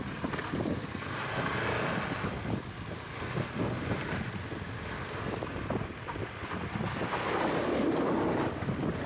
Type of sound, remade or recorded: recorded